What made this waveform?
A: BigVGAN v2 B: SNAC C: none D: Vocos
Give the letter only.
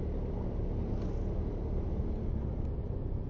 C